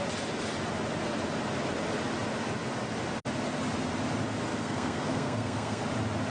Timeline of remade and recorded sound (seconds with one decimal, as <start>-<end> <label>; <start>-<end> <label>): 0.0-4.5 recorded; 4.5-5.8 remade; 5.8-6.3 recorded